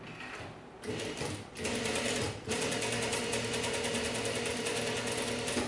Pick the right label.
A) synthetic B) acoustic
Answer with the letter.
B